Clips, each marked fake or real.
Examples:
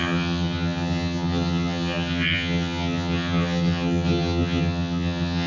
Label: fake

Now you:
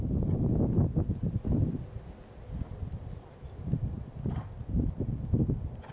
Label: real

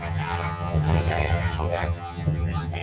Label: fake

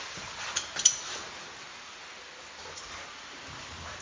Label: real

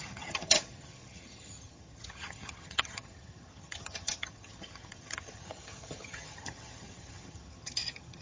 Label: fake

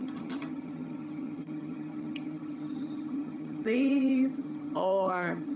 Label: fake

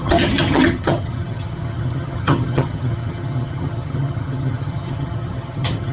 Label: fake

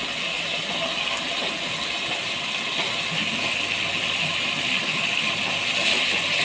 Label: real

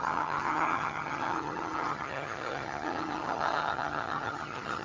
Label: fake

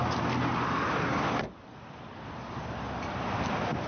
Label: real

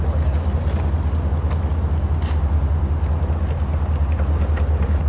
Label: real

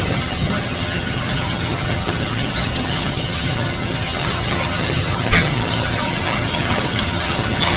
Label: fake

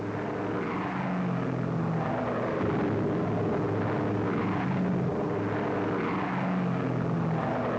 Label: real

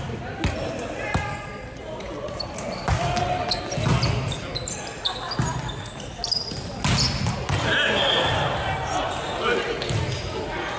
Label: real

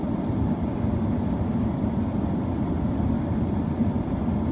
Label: real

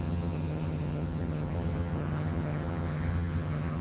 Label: fake